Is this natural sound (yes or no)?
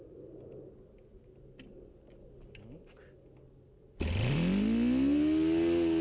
yes